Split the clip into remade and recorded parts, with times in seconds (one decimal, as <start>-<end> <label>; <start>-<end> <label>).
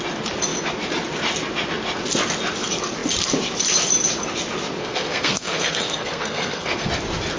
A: 0.0-4.8 recorded; 4.8-6.9 remade; 6.9-7.4 recorded